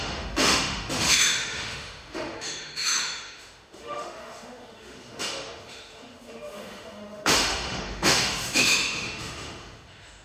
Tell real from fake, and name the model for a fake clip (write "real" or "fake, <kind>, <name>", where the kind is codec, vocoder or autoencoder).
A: fake, autoencoder, DAC-VAE